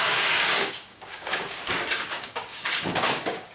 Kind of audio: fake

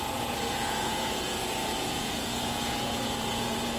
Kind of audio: fake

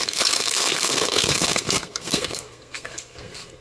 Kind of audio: fake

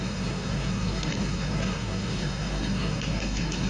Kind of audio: fake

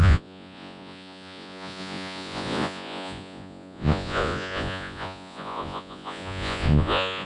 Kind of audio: fake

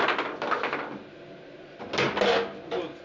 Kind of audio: real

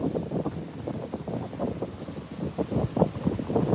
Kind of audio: real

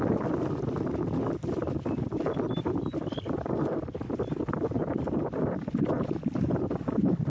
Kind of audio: real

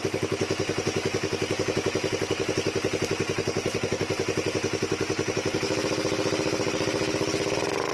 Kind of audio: real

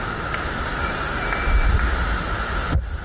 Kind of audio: real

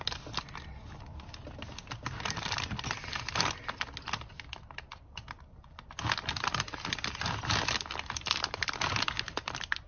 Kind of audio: real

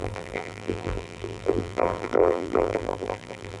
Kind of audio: fake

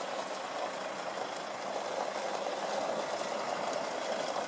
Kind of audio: real